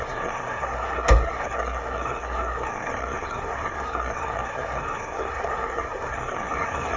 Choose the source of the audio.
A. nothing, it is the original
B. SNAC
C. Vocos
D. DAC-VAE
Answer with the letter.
B